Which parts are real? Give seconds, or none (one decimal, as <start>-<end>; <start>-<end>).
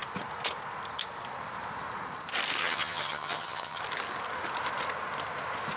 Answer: 0.0-2.6; 3.8-5.8